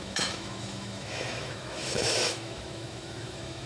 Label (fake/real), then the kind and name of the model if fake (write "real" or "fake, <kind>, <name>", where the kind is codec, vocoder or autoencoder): fake, autoencoder, DAC-VAE